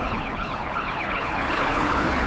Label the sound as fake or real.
fake